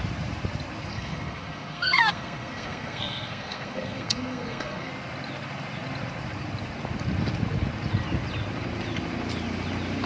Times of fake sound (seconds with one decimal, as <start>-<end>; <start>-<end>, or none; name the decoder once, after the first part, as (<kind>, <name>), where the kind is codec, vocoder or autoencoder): 0.9-4.9 (codec, SNAC)